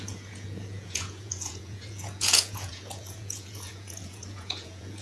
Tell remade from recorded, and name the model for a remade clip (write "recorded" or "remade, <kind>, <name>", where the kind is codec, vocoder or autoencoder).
remade, vocoder, Vocos